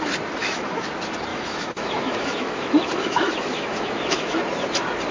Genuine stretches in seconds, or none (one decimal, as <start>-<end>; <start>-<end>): 0.0-0.4; 0.9-1.3; 4.4-5.1